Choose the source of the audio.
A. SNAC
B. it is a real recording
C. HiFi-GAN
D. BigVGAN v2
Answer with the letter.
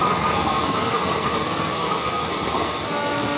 A